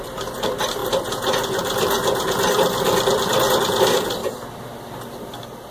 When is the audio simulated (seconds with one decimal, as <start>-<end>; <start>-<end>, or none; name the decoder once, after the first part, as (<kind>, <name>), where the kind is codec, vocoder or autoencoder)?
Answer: 0.0-0.8 (vocoder, BigVGAN v2); 1.6-4.2; 4.8-5.7